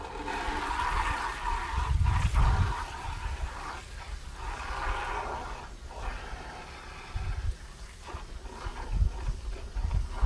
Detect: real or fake real